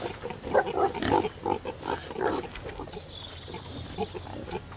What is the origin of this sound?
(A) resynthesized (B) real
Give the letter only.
B